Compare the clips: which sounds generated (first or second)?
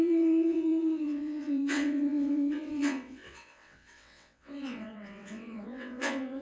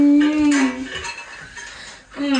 first